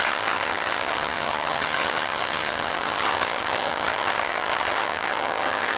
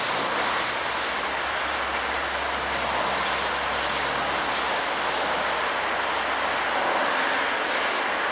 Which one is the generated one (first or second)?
first